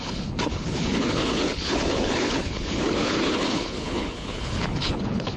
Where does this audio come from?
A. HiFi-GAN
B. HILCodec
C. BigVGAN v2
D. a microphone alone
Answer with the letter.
B